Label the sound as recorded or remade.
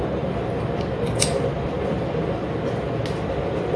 recorded